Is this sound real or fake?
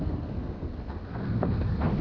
fake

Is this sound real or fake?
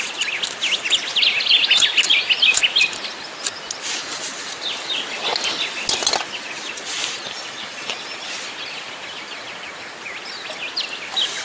real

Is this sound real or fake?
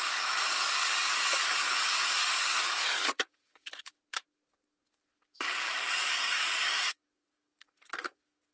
fake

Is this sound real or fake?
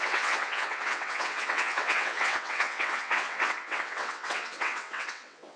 fake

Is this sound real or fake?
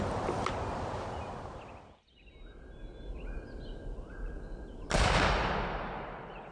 real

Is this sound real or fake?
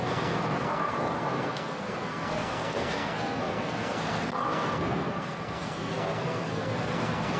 fake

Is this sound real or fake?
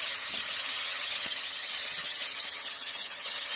fake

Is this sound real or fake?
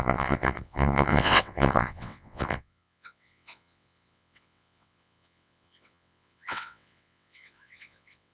fake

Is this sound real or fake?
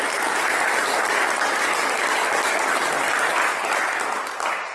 real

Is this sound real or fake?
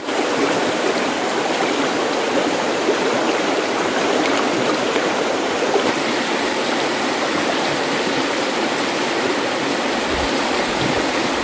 fake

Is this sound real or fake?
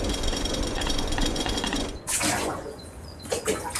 fake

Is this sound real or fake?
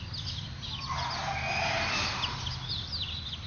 real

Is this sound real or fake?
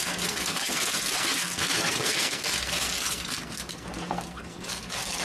fake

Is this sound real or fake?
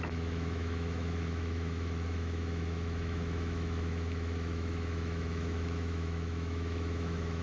fake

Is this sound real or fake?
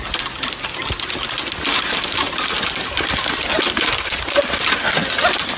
real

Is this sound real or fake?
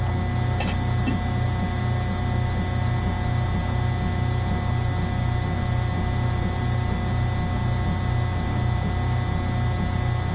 real